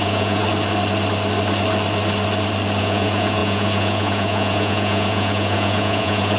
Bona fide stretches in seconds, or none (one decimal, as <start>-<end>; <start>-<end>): 0.4-2.8